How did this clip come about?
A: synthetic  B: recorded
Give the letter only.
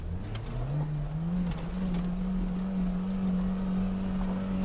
B